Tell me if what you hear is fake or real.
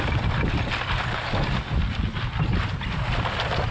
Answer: real